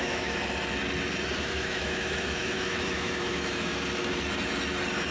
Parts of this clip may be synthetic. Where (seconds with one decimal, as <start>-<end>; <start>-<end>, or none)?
0.0-0.4; 1.4-3.7